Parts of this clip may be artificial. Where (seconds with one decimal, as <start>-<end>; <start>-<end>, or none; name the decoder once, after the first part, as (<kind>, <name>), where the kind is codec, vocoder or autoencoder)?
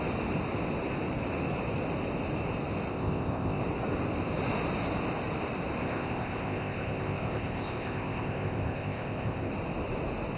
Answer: 2.9-3.6 (codec, ZipCodec); 5.8-9.5